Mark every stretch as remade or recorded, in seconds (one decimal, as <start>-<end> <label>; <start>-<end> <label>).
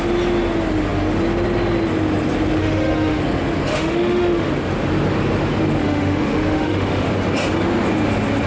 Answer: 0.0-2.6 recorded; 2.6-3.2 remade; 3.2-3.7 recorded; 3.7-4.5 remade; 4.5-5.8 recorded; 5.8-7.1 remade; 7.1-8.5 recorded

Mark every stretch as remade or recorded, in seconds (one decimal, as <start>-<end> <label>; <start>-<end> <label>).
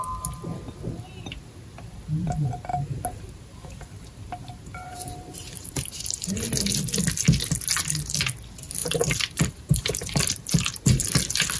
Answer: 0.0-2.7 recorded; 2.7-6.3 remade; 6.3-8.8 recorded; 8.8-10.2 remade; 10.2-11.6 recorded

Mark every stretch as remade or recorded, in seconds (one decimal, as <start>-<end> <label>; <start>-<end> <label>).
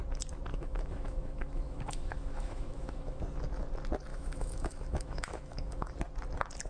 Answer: 0.0-0.5 recorded; 0.5-3.2 remade; 3.2-4.1 recorded; 4.1-5.9 remade; 5.9-6.7 recorded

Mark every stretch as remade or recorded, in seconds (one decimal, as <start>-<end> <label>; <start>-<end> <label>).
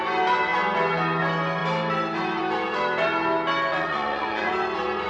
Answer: 0.0-3.7 recorded; 3.7-4.5 remade; 4.5-5.1 recorded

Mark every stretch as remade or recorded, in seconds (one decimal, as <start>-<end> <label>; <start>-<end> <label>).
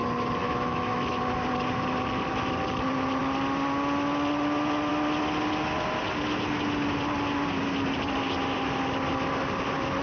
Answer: 0.0-0.4 recorded; 0.4-1.2 remade; 1.2-10.0 recorded